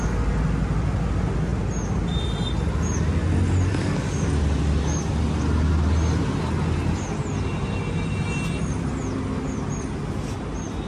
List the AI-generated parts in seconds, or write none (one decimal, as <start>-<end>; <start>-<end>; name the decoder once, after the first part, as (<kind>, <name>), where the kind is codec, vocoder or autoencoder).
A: none